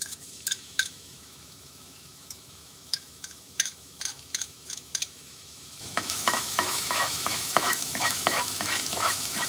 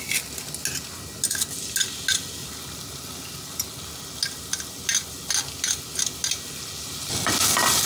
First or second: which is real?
second